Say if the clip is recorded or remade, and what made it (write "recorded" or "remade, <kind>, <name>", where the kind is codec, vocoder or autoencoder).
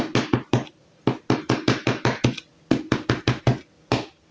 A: recorded